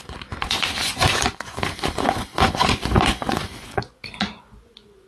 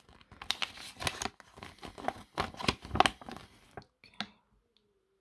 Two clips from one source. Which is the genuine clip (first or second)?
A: second